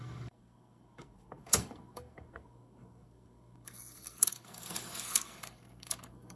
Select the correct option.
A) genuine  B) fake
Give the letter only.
B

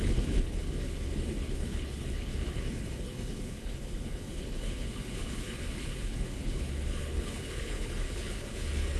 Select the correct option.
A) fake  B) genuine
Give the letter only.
A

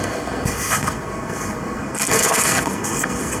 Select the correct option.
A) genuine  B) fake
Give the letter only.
B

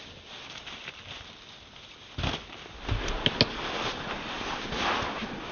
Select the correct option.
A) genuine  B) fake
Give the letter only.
A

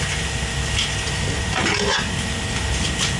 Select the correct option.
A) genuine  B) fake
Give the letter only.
A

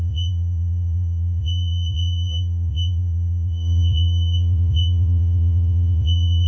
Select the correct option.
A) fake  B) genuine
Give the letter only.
A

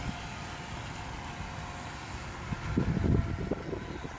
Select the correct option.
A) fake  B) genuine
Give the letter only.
B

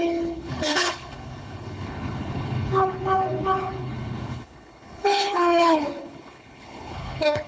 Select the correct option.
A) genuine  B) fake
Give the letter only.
B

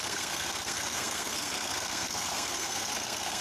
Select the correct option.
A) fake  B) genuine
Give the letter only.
A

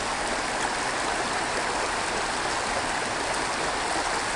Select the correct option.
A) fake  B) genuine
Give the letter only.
B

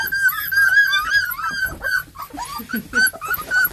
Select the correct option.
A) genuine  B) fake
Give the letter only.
A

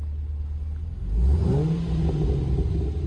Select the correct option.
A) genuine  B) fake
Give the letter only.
A